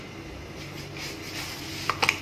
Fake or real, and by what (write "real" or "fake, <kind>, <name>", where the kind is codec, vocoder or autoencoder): real